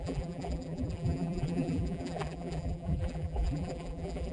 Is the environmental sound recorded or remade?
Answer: remade